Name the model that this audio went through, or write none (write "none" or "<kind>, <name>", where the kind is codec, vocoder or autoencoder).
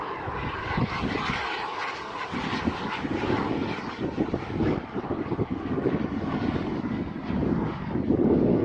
codec, DAC